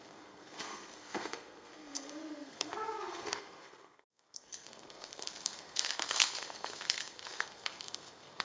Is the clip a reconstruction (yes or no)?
yes